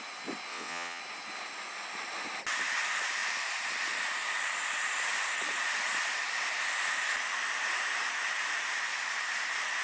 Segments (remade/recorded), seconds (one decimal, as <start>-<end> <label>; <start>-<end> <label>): 0.0-0.5 recorded; 0.5-1.0 remade; 1.0-9.8 recorded